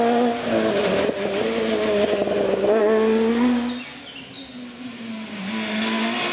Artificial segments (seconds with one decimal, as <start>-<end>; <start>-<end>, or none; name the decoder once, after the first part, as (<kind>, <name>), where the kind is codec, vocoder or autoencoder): none